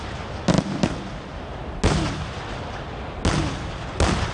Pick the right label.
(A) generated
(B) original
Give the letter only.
B